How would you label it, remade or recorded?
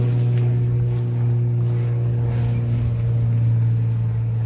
recorded